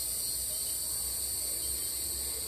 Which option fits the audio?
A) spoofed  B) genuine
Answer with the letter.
B